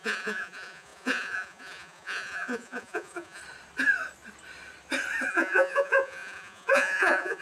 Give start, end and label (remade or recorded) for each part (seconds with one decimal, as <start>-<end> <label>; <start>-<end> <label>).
0.0-3.4 remade; 3.4-5.3 recorded; 5.3-7.4 remade

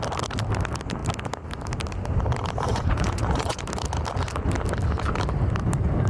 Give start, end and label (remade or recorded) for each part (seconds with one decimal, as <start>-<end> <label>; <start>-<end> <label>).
0.0-2.7 recorded; 2.7-3.6 remade; 3.6-6.1 recorded

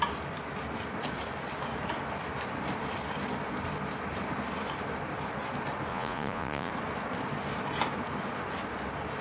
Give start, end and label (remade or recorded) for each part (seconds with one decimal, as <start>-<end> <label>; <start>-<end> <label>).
0.0-5.9 recorded; 5.9-6.7 remade; 6.7-9.2 recorded